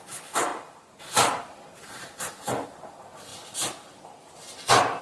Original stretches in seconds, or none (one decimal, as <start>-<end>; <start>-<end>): 0.0-5.0